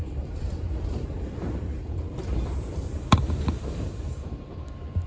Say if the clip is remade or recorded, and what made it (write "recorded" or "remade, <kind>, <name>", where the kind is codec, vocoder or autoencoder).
remade, vocoder, BigVGAN v2